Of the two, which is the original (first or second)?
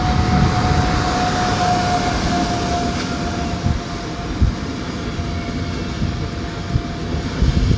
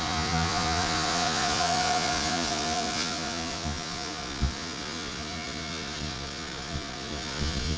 first